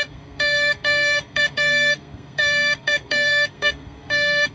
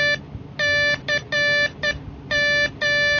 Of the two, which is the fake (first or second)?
first